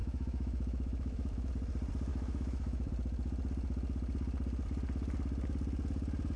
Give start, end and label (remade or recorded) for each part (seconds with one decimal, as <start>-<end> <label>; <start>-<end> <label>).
0.0-1.5 remade; 1.5-2.1 recorded; 2.1-2.9 remade; 2.9-6.4 recorded

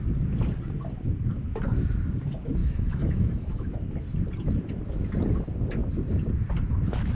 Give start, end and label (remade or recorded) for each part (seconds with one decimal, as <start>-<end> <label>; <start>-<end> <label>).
0.0-2.6 recorded; 2.6-3.7 remade; 3.7-7.1 recorded